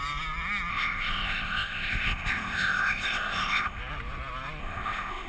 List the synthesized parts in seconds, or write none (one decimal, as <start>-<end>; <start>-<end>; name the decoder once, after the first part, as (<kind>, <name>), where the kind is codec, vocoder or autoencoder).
0.7-3.8 (codec, ZipCodec); 4.6-5.3